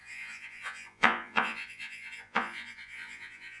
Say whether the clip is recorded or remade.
remade